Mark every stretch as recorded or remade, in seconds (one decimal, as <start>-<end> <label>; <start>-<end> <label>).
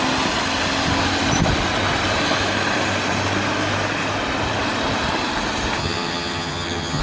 0.0-5.8 recorded; 5.8-7.0 remade